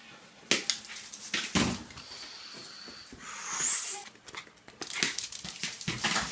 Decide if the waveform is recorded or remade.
recorded